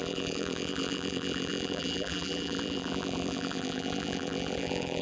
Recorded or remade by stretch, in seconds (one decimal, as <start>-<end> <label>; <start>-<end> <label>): 0.0-5.0 remade